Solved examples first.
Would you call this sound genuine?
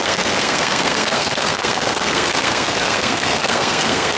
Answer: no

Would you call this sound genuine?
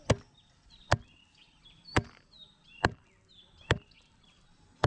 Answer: yes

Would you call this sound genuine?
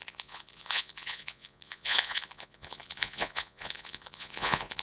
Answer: no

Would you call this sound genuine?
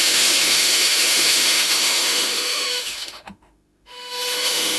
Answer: no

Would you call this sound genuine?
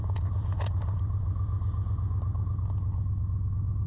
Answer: yes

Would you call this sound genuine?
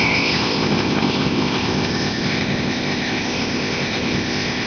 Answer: no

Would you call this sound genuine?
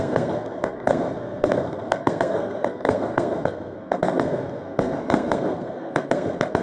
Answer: no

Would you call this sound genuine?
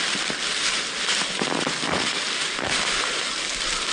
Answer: yes